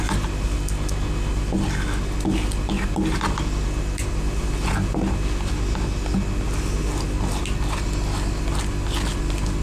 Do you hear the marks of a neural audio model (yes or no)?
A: no